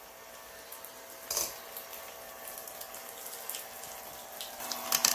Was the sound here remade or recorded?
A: recorded